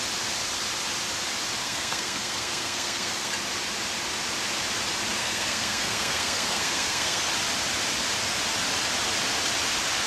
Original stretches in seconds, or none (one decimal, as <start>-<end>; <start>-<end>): 0.0-1.6; 3.3-5.2; 7.3-10.1